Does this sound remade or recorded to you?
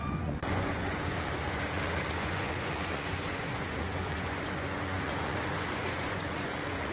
remade